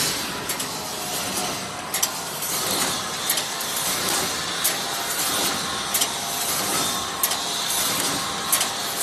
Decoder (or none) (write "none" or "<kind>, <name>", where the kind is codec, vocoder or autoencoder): none